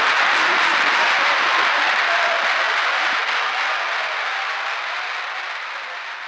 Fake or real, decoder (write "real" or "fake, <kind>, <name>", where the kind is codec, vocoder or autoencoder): real